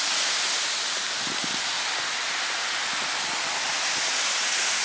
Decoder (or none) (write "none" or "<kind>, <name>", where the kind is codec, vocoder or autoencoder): none